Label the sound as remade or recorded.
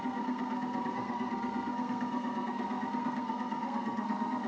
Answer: remade